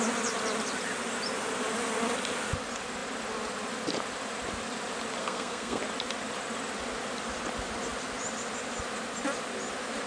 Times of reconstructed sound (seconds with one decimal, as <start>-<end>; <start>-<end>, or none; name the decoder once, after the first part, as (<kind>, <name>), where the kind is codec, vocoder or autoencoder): 5.2-5.8 (codec, SNAC)